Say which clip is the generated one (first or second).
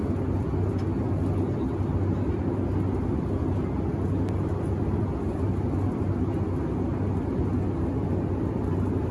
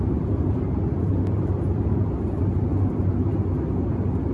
second